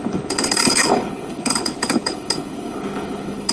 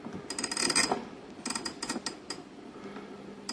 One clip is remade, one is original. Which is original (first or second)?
second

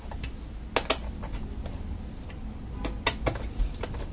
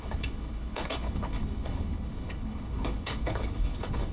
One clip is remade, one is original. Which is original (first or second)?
first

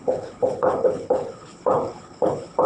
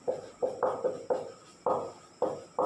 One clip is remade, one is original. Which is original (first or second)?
second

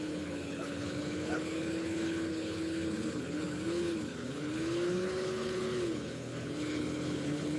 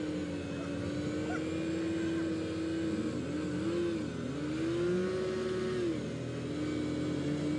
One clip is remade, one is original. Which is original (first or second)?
second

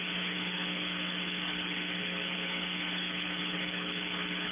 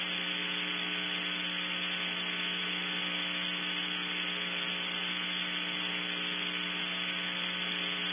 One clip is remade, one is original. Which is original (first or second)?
second